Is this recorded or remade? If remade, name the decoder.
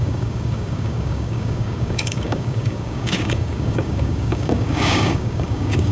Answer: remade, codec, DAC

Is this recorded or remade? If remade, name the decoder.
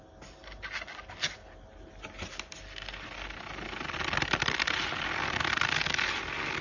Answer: recorded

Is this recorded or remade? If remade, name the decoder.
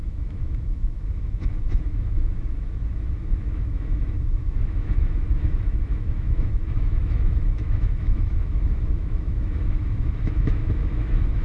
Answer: remade, autoencoder, DAC-VAE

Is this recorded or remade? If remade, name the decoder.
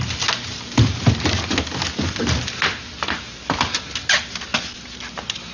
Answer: recorded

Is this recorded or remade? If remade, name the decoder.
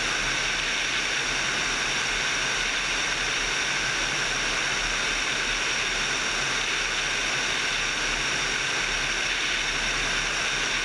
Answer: recorded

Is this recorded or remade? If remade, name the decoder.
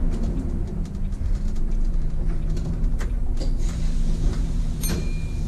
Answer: remade, vocoder, BigVGAN v2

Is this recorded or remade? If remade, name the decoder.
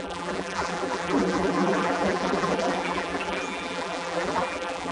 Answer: remade, vocoder, BigVGAN v2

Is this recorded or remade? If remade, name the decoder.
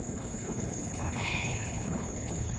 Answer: remade, codec, HILCodec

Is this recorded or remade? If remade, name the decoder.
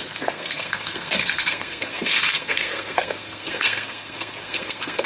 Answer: remade, codec, SNAC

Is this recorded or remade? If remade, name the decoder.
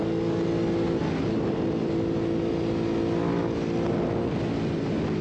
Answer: recorded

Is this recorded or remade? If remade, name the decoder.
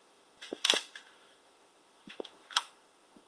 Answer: remade, autoencoder, DAC-VAE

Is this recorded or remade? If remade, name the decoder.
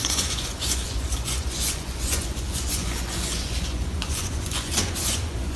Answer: remade, vocoder, Vocos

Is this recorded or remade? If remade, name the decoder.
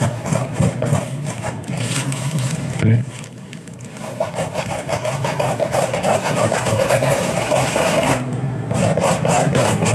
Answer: remade, codec, SNAC